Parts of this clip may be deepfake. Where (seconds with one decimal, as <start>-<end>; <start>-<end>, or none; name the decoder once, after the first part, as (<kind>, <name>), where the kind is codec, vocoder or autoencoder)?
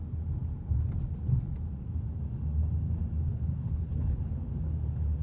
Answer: 3.3-4.5 (codec, HILCodec)